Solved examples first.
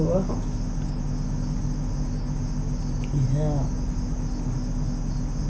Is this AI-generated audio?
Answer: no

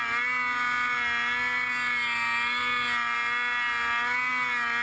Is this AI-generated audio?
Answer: no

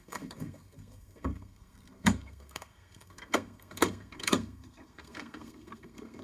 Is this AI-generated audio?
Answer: yes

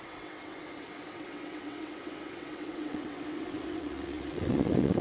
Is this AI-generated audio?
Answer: yes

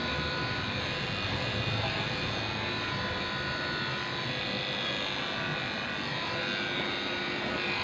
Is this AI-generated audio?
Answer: no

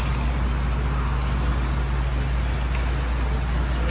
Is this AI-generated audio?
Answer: no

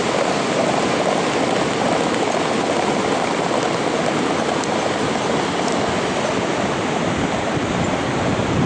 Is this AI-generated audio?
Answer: no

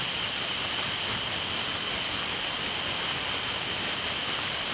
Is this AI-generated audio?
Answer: no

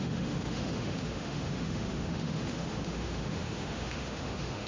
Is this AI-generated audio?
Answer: yes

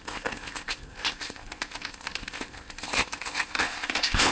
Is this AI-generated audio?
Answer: yes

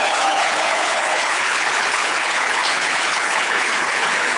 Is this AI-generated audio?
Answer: yes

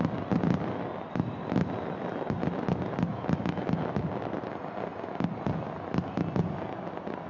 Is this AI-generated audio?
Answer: no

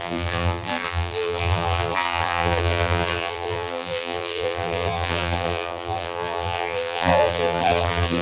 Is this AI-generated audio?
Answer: yes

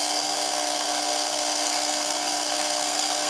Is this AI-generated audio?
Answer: yes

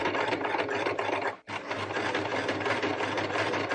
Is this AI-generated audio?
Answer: no